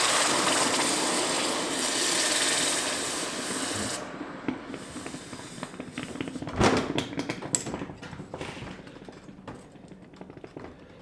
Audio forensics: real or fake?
real